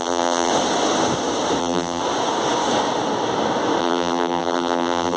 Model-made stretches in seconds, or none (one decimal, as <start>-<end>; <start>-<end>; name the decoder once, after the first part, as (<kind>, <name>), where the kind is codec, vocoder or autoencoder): 0.0-0.5 (vocoder, BigVGAN v2); 1.6-2.0; 3.8-5.2